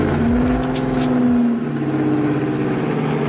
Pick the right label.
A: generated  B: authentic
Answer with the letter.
B